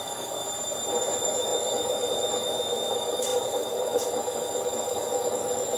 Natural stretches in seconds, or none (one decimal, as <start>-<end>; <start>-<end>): 0.4-1.0

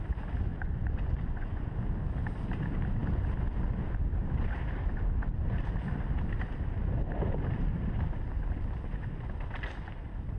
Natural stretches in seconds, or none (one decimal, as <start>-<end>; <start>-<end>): 0.0-0.5; 1.7-10.4

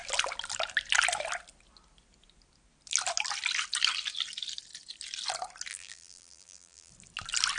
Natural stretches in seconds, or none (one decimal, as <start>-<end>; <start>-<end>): 0.0-5.7; 6.9-7.6

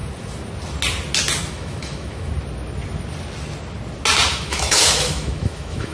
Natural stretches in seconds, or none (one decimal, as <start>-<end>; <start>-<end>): 0.0-1.5; 2.3-4.3

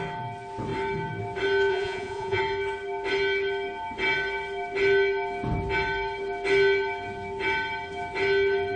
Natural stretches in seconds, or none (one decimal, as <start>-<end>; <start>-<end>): 0.0-1.7; 2.4-8.8

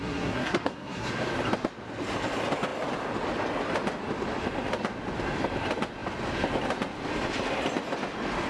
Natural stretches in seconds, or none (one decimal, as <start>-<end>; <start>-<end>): 1.1-8.5

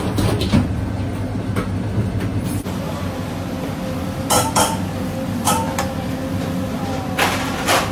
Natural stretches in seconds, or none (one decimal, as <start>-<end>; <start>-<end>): 0.0-7.9

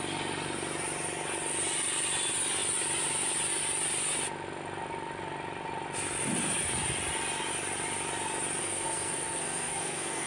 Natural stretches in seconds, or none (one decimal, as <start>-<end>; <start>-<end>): 0.0-8.6